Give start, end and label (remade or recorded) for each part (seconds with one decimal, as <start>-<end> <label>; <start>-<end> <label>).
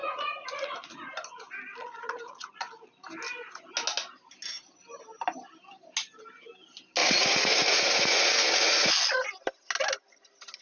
0.0-1.1 remade; 1.1-1.7 recorded; 1.7-2.9 remade; 2.9-7.0 recorded; 7.0-8.9 remade; 8.9-10.6 recorded